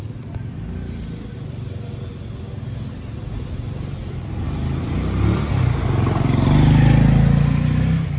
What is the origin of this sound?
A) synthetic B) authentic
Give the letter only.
B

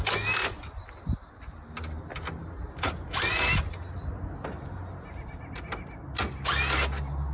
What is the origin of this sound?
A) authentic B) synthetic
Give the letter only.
A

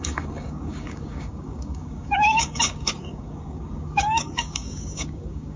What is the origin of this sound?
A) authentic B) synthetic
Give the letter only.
B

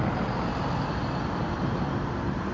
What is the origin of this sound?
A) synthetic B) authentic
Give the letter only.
B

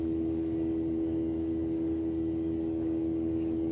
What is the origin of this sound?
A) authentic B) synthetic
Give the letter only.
B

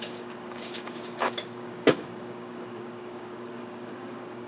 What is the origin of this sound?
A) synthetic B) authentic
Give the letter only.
A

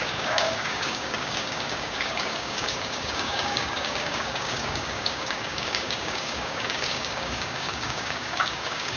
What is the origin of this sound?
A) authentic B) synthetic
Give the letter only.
B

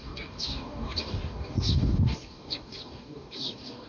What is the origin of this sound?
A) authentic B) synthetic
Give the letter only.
B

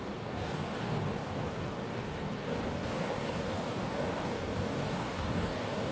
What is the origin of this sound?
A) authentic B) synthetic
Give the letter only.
B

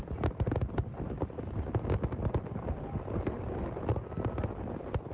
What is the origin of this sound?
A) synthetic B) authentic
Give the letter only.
B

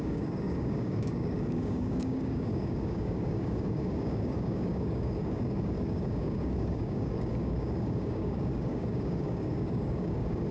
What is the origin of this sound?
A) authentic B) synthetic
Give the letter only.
B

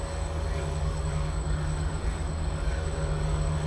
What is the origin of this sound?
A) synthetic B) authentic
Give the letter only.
A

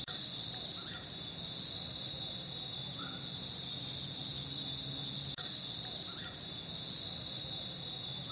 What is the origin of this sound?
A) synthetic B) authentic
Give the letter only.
B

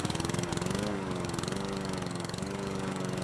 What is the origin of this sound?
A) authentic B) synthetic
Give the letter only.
B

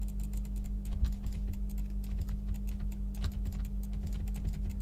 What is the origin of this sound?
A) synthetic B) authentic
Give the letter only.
B